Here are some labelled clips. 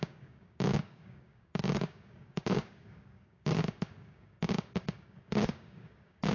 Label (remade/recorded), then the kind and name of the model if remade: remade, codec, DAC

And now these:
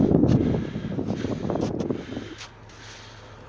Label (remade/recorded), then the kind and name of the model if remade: recorded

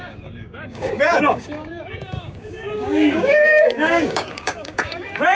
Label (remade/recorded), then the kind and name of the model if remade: remade, codec, DAC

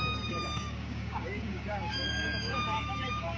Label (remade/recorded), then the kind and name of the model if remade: remade, codec, DAC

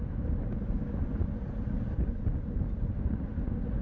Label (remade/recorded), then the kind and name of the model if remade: recorded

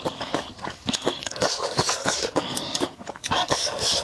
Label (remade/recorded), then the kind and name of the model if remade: remade, codec, DAC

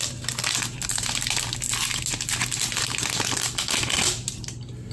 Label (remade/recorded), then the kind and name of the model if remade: recorded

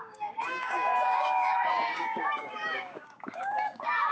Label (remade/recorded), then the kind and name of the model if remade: remade, codec, DAC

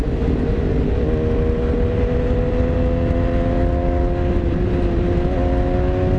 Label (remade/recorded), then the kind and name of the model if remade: recorded